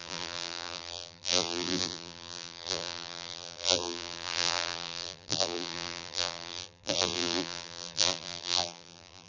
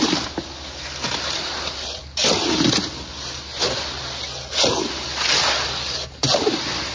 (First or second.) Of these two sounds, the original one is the second